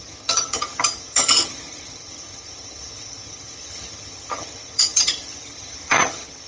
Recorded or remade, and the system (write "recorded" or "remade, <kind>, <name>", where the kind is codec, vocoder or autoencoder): remade, vocoder, HiFi-GAN